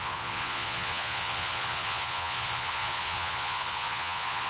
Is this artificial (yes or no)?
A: yes